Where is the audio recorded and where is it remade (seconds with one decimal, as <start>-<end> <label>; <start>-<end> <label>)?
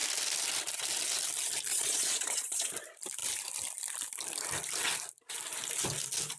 0.0-1.7 recorded; 1.7-2.7 remade; 2.7-6.4 recorded